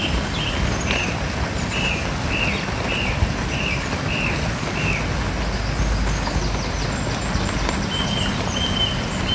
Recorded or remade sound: recorded